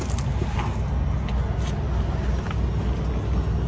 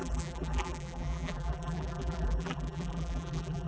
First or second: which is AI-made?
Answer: second